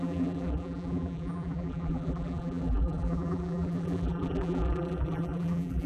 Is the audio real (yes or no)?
no